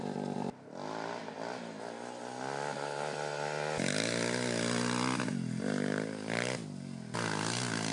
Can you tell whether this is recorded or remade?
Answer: recorded